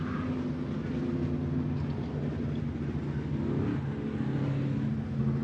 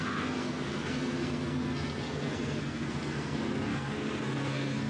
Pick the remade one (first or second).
second